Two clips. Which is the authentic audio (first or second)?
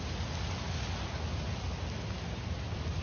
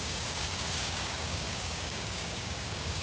first